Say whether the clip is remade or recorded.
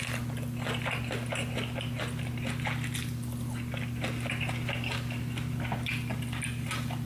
recorded